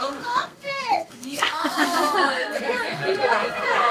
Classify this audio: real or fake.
fake